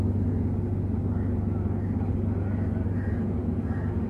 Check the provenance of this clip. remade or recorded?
recorded